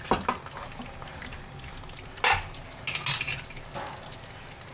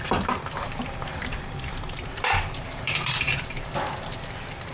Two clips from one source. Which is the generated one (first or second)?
second